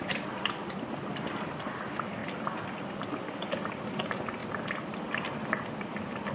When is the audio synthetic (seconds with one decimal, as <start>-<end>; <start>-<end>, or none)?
0.0-2.2; 3.8-4.4